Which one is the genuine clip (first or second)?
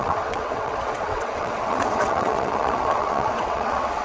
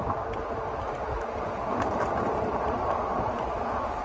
second